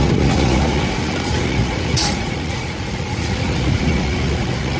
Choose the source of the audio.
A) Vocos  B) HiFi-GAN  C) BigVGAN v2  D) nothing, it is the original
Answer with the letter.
A